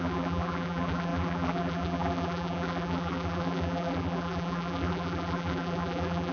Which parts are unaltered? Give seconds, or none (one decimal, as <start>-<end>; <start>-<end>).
none